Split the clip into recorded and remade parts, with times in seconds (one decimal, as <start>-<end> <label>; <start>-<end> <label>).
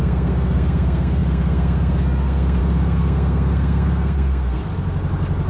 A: 0.0-4.6 remade; 4.6-5.5 recorded